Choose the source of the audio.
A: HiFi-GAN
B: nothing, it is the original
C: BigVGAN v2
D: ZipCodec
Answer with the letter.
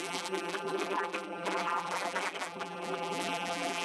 C